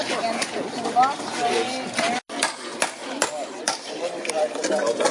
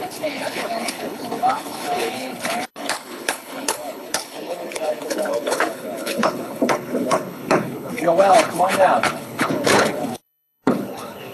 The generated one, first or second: second